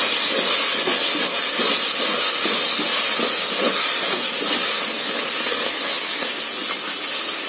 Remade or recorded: recorded